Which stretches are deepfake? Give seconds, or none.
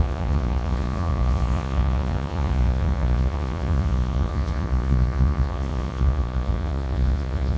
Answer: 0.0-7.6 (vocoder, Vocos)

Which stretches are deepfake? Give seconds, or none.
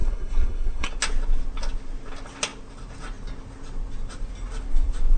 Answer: 0.0-0.9 (codec, SNAC)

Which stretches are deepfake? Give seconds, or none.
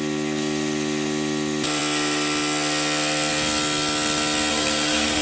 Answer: 4.5-5.2 (codec, SNAC)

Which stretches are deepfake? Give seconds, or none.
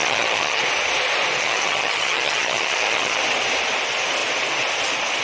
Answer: 0.0-0.6 (vocoder, HiFi-GAN); 1.4-3.2